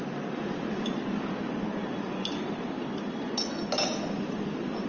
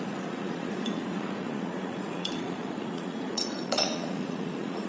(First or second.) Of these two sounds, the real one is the first